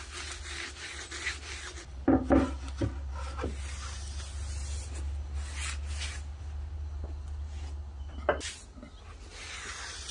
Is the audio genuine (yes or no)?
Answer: yes